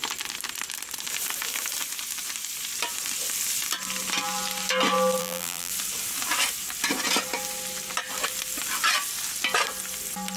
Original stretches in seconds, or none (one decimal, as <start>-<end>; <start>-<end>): 0.0-5.2; 5.7-10.4

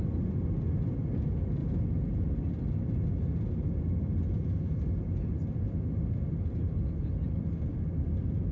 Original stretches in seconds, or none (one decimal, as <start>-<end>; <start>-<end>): 0.0-7.7

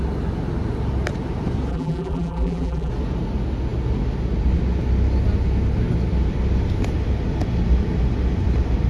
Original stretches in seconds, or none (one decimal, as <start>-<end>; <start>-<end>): 0.0-1.7; 2.9-8.9

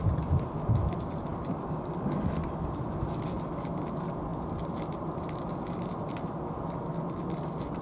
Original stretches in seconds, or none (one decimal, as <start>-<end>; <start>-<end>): 0.0-1.3; 2.1-7.8

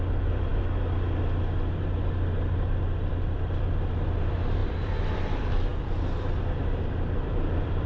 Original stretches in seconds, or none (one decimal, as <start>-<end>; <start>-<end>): 0.5-3.1

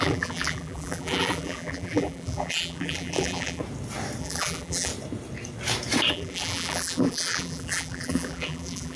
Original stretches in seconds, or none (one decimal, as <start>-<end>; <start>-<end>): 3.6-4.2; 4.9-6.1